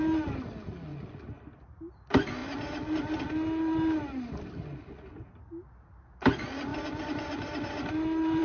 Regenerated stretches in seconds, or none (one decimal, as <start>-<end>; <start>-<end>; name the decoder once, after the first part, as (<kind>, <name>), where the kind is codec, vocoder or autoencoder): none